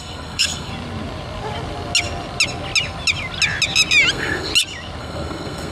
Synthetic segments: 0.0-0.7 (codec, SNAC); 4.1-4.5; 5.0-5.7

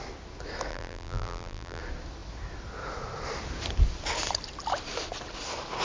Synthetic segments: 0.7-1.8 (vocoder, BigVGAN v2)

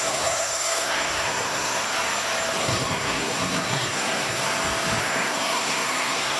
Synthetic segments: 0.0-1.8 (codec, SNAC); 2.6-4.4; 5.0-6.4

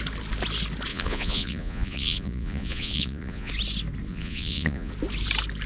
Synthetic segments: 0.9-3.5 (vocoder, Vocos); 4.1-4.9